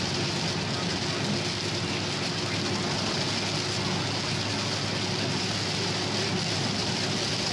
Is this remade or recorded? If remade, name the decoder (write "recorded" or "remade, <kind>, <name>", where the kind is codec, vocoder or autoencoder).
recorded